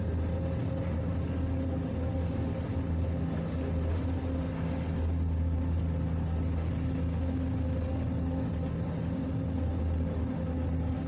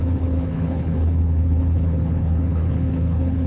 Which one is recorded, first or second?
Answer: first